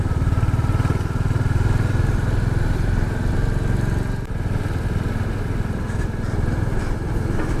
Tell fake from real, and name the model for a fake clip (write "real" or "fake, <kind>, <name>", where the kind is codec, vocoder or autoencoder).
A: real